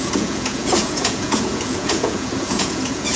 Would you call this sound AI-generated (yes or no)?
yes